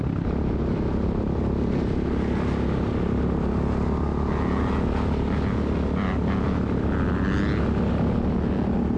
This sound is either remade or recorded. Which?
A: recorded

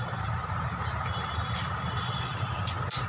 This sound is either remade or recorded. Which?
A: remade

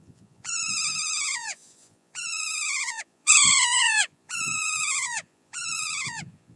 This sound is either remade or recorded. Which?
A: remade